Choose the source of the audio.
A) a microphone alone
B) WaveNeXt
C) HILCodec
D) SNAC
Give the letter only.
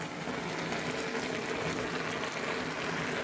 A